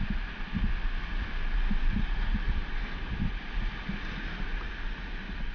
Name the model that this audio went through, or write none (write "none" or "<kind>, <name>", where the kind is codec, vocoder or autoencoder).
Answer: none